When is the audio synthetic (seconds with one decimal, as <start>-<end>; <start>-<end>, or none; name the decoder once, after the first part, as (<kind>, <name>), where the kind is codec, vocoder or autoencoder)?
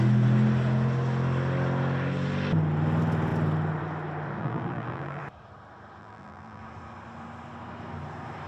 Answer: 4.4-5.2 (vocoder, BigVGAN v2); 6.0-6.6